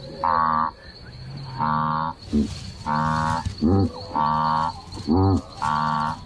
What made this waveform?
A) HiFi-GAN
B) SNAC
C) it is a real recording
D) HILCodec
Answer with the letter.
C